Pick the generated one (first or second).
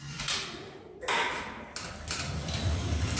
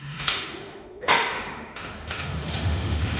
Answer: second